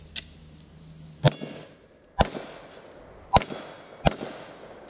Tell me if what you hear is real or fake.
real